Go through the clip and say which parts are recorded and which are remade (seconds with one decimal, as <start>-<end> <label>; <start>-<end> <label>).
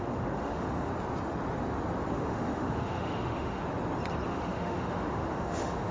0.0-0.9 remade; 0.9-2.1 recorded; 2.1-3.6 remade; 3.6-4.3 recorded; 4.3-5.9 remade